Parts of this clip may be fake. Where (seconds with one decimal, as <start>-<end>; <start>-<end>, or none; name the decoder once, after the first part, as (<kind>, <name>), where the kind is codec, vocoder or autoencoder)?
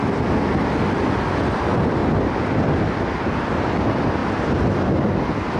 none